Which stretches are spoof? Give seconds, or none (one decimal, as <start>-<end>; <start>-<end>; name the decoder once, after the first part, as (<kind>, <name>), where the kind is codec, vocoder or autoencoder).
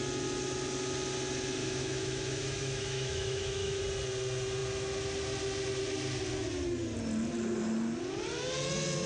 1.6-3.8 (autoencoder, DAC-VAE)